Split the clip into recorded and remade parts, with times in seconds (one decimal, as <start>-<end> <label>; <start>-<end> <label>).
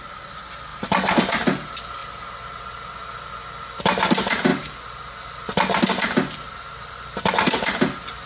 0.0-8.3 recorded